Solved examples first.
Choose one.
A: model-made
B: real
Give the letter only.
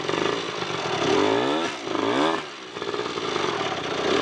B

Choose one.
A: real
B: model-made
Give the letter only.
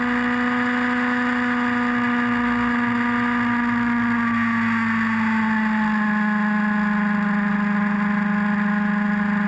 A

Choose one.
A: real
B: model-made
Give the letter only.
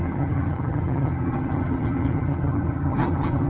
B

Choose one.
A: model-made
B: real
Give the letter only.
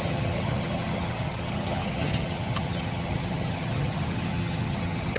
A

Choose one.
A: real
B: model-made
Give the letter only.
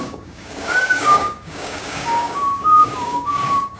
B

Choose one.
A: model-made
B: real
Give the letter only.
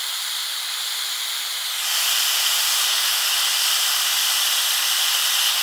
B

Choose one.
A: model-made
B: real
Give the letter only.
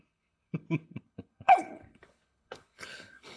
A